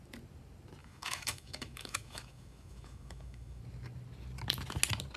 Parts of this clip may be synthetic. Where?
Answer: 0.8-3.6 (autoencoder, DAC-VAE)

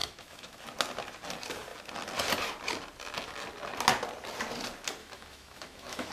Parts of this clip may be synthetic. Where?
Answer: 0.0-0.6 (autoencoder, DAC-VAE); 5.0-6.1

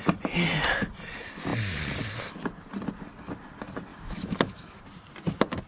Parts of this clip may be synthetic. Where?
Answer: 3.9-4.8 (autoencoder, DAC-VAE)

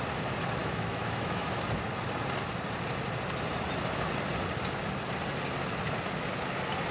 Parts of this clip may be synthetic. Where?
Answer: 0.6-1.6 (autoencoder, DAC-VAE)

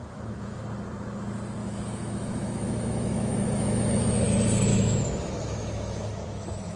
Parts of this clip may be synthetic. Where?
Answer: 0.0-0.6 (autoencoder, DAC-VAE); 1.6-4.3; 4.7-6.8

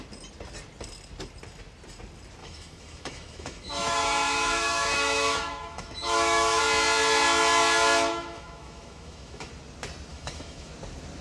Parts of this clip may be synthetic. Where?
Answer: 2.4-6.6 (autoencoder, DAC-VAE); 8.1-9.5; 10.1-10.7